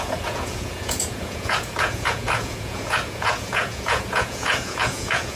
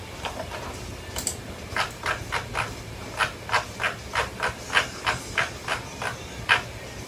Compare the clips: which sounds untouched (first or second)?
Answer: second